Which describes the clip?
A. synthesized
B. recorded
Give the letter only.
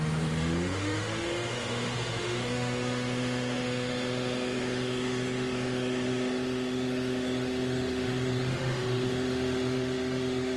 A